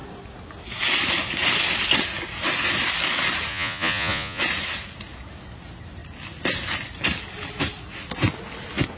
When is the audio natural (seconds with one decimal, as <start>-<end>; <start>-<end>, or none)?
0.0-3.5; 4.4-9.0